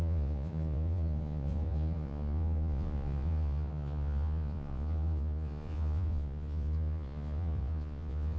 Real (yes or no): no